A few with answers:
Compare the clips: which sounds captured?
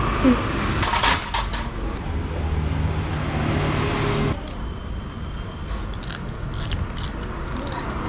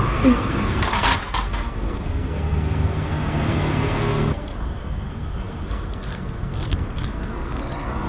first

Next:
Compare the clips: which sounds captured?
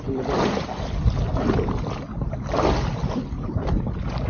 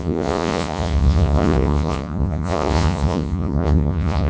first